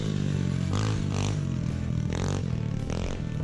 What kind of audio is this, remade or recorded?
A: recorded